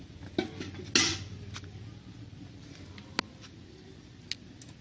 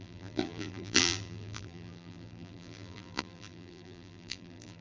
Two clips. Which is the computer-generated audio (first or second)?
second